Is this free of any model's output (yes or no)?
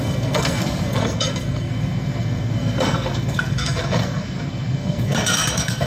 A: no